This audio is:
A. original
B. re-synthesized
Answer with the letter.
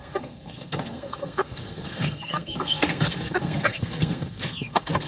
B